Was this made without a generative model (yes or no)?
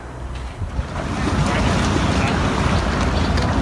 yes